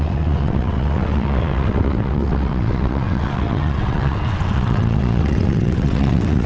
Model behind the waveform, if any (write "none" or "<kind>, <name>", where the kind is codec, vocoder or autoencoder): vocoder, WaveNeXt